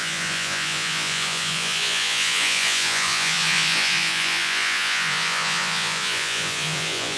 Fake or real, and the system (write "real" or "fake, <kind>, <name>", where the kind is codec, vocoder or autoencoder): fake, vocoder, Vocos